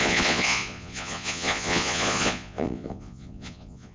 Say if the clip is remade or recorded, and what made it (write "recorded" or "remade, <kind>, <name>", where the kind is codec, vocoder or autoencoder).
remade, vocoder, Vocos